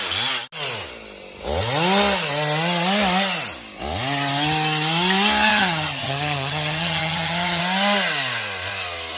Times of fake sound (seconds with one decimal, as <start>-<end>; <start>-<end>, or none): 5.5-7.6